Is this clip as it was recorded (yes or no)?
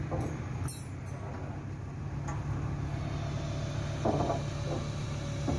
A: yes